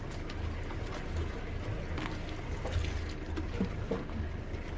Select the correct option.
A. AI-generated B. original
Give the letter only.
B